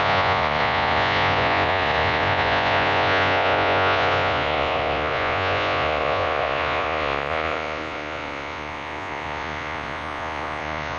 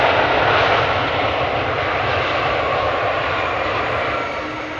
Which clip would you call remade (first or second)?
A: first